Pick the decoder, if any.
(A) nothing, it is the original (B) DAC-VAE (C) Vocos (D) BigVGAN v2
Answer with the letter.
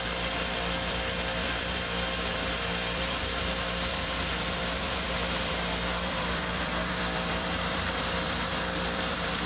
D